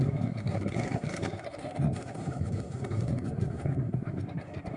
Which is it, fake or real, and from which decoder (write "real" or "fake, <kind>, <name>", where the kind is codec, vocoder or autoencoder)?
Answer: fake, codec, SNAC